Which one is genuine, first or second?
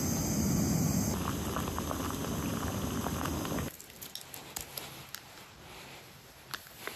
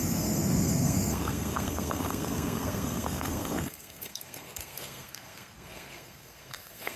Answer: first